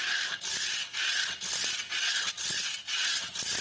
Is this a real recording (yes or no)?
yes